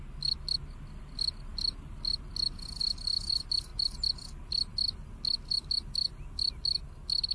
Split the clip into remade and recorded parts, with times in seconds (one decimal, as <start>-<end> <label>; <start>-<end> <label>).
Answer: 0.0-7.3 recorded